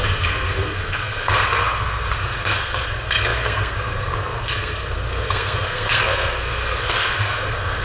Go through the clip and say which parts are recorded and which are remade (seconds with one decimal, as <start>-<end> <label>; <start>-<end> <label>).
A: 0.0-7.8 remade